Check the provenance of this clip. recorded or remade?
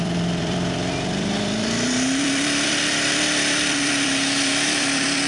remade